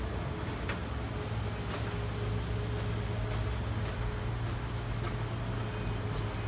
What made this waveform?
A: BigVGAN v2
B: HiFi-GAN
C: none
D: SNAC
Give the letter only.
C